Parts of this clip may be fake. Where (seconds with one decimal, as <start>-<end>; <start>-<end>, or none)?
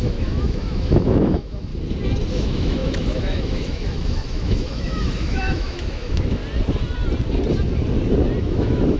0.0-1.7; 2.3-6.4; 8.4-9.0